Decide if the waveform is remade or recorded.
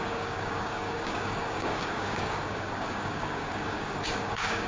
remade